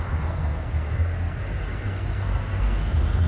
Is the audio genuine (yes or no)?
no